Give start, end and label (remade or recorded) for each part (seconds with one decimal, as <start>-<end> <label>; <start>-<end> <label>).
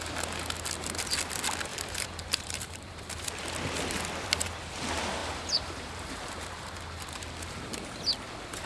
0.0-1.7 recorded; 1.7-3.3 remade; 3.3-5.2 recorded; 5.2-7.1 remade; 7.1-8.7 recorded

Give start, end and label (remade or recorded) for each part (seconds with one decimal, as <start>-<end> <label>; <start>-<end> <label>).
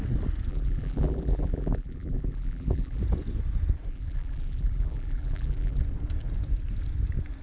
0.0-0.5 recorded; 0.5-3.0 remade; 3.0-3.9 recorded; 3.9-5.8 remade; 5.8-7.4 recorded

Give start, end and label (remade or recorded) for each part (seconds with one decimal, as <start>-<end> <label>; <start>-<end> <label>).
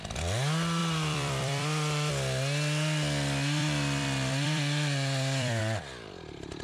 0.0-0.8 recorded; 0.8-2.1 remade; 2.1-3.6 recorded; 3.6-5.6 remade; 5.6-6.6 recorded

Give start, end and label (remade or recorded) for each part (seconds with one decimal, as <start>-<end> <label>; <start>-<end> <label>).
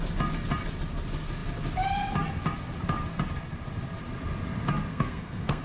0.0-4.9 recorded; 4.9-5.6 remade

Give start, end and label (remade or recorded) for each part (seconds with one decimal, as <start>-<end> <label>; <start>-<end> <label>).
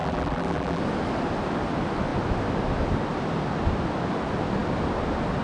0.0-0.8 remade; 0.8-5.4 recorded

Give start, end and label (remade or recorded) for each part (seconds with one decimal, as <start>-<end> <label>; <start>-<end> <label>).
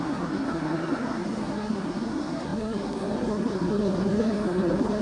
0.0-5.0 remade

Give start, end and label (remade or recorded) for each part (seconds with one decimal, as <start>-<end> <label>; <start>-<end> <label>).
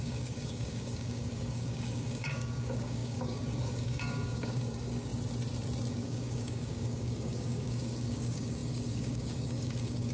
0.0-5.1 remade; 5.1-5.9 recorded; 5.9-10.1 remade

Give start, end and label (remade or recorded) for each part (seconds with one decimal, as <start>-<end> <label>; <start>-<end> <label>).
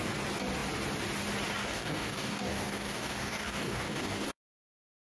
0.0-1.6 recorded; 1.6-4.6 remade; 4.6-5.0 recorded